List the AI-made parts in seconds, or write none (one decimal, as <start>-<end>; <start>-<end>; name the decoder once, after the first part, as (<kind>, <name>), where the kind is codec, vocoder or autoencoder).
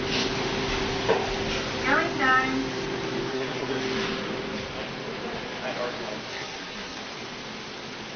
3.3-3.8 (codec, SNAC); 6.3-7.0